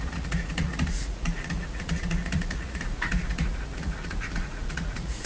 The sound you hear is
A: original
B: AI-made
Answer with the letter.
B